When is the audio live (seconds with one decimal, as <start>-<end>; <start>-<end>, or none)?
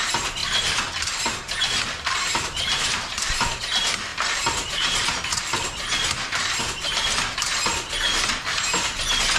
0.0-0.4; 3.6-4.1; 6.6-9.4